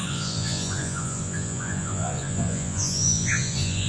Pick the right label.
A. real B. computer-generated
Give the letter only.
B